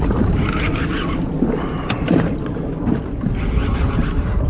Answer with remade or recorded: recorded